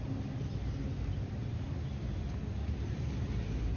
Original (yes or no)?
yes